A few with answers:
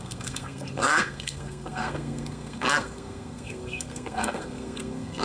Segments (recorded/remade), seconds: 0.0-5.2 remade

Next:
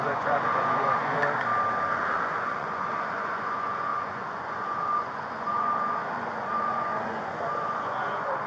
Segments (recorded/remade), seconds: 0.0-1.2 remade; 1.2-1.9 recorded; 1.9-8.5 remade

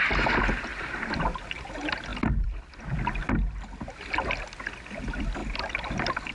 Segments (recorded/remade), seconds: 0.0-0.7 recorded; 0.7-1.2 remade; 1.2-2.1 recorded; 2.1-2.8 remade; 2.8-5.4 recorded; 5.4-6.3 remade